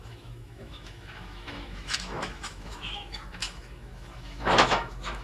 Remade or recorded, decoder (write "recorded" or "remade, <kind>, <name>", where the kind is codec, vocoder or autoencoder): remade, autoencoder, DAC-VAE